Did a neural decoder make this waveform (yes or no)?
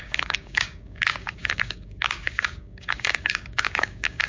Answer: yes